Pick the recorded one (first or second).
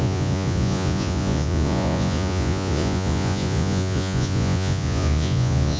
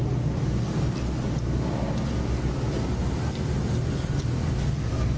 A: second